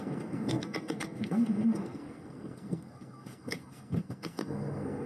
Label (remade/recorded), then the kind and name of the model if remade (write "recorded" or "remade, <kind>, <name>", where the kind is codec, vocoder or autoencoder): remade, codec, SNAC